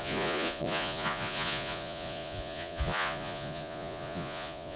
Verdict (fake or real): fake